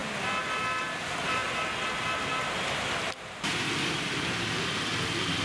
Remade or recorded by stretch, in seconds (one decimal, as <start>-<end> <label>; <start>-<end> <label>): 0.0-5.4 recorded